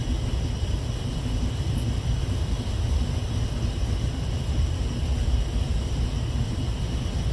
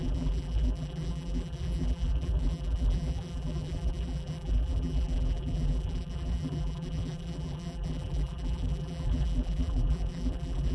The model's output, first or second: second